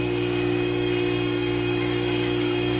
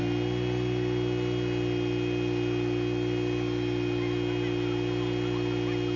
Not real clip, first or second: first